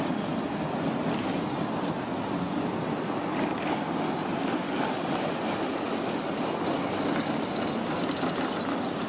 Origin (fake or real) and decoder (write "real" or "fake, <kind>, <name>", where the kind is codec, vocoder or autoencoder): real